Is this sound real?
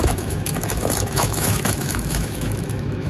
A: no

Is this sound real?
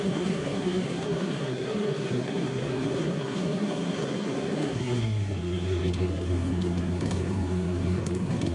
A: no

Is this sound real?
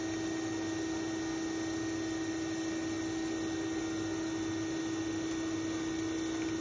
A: yes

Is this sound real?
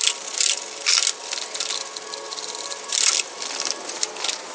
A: yes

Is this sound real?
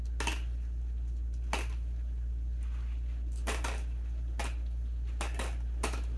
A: yes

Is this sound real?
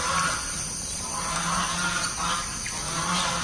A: yes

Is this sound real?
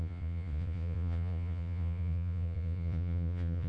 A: no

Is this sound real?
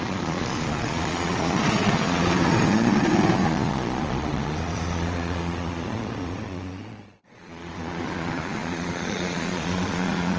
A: no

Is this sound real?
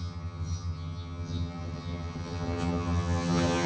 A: no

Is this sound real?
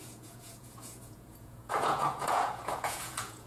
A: no